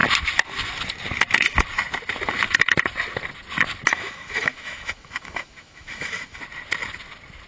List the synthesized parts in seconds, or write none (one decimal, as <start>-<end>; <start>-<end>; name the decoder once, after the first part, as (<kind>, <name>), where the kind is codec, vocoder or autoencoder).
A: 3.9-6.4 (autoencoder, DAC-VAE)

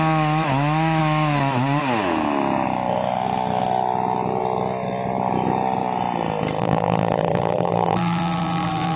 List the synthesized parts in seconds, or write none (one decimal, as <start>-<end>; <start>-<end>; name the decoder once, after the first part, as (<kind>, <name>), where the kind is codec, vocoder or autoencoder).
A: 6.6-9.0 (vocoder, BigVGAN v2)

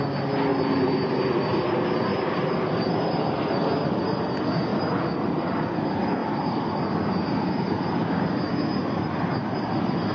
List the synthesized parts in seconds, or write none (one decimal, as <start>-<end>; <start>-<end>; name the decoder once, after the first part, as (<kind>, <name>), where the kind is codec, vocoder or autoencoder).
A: 0.5-1.6 (vocoder, BigVGAN v2); 2.1-3.7; 4.7-5.7